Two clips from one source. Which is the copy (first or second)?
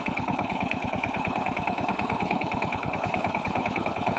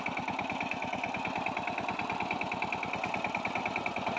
first